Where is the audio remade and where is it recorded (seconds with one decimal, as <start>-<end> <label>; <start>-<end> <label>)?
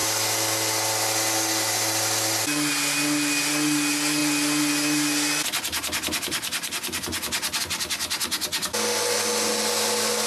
0.0-10.3 recorded